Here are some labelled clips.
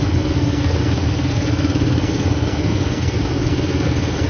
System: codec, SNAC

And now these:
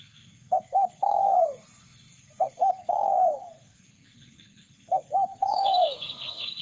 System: codec, SNAC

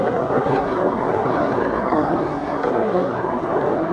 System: codec, SNAC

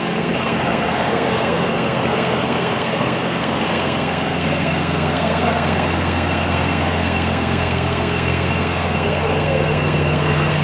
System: codec, SNAC